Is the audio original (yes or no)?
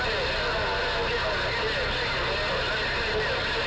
yes